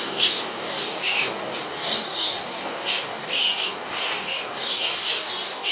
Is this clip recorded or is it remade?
remade